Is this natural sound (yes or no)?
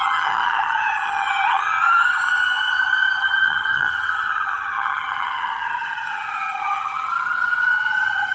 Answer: no